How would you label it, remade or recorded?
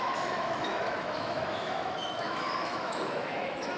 remade